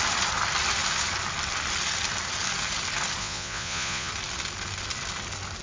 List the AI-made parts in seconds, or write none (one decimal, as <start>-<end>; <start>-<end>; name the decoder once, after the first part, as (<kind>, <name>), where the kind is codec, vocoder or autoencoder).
3.2-4.1 (vocoder, Vocos)